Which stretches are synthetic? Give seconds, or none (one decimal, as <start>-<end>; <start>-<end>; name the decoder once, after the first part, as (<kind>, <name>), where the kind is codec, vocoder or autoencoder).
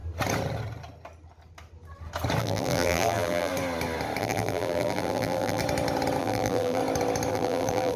2.4-3.5 (vocoder, BigVGAN v2); 4.2-5.6; 6.2-6.8; 7.3-8.0